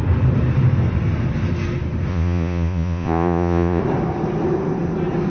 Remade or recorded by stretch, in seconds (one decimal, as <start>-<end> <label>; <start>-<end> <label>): 0.0-2.1 recorded; 2.1-3.8 remade; 3.8-5.3 recorded